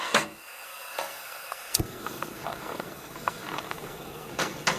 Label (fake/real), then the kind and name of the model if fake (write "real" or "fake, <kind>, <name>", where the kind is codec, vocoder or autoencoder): fake, codec, SNAC